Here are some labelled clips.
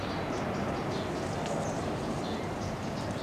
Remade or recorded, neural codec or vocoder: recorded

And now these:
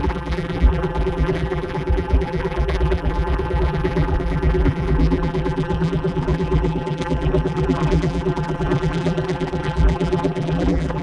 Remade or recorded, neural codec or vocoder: remade, vocoder, BigVGAN v2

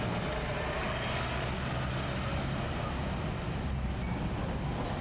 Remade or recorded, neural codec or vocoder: recorded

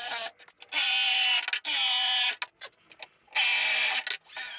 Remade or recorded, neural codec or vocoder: recorded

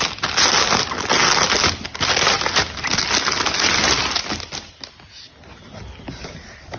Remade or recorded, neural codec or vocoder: recorded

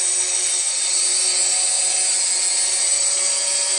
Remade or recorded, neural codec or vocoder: recorded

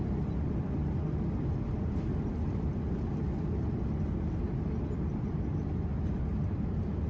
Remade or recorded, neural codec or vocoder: remade, vocoder, BigVGAN v2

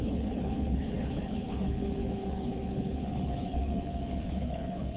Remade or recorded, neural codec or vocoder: remade, codec, HILCodec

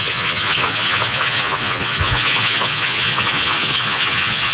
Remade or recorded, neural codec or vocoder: remade, vocoder, Vocos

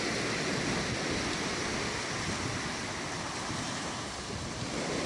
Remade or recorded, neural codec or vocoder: recorded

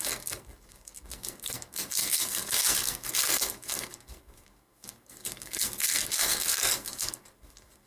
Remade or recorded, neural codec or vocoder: remade, codec, SNAC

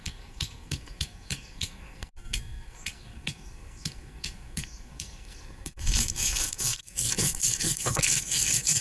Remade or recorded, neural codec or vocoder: remade, codec, SNAC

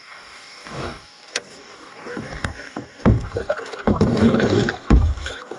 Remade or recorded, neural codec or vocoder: remade, codec, DAC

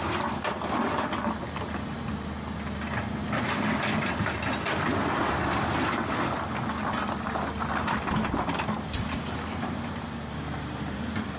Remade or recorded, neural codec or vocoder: recorded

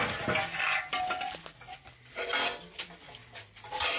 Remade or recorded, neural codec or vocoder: recorded